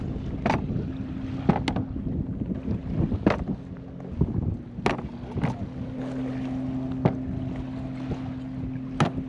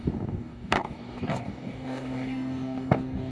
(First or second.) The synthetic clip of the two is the second